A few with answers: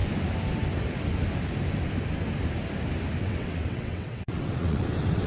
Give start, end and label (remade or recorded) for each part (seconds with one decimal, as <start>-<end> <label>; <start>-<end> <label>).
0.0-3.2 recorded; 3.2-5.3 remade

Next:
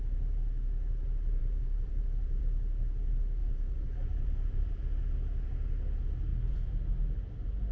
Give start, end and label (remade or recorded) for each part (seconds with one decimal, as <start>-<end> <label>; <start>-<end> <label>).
0.0-1.4 recorded; 1.4-2.4 remade; 2.4-3.4 recorded; 3.4-4.8 remade; 4.8-6.3 recorded; 6.3-7.2 remade; 7.2-7.7 recorded

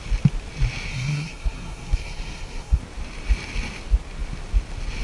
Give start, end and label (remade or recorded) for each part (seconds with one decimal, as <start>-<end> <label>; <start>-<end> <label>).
0.0-0.9 recorded; 0.9-2.8 remade; 2.8-5.0 recorded